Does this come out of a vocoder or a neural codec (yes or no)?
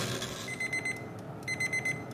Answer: no